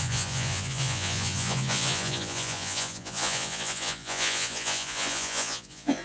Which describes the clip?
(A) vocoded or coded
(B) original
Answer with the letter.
A